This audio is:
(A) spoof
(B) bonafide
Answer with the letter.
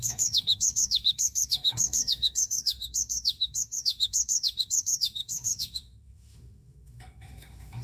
A